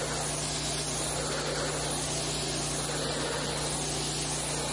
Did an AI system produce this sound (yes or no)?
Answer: no